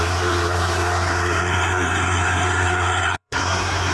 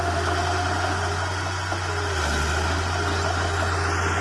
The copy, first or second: first